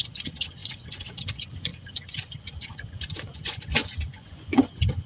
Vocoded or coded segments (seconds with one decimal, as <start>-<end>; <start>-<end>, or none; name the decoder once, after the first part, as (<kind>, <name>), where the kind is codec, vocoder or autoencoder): 0.0-5.1 (vocoder, Vocos)